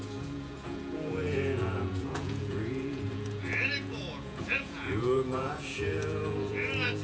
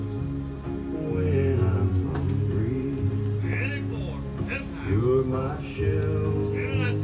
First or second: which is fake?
first